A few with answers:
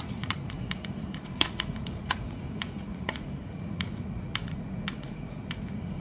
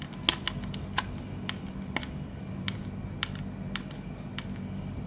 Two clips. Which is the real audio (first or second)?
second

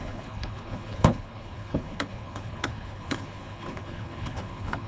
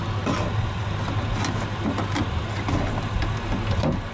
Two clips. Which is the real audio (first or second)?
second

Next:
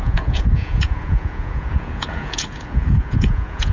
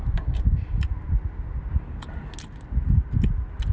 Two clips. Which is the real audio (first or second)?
second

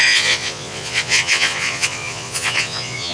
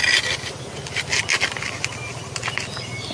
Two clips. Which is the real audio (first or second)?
second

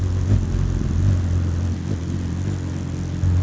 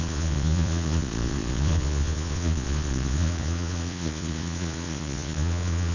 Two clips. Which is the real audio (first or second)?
first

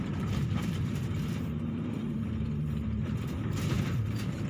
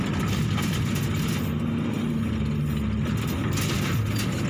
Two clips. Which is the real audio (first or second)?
second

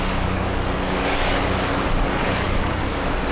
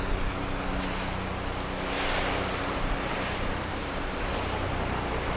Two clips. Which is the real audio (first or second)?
second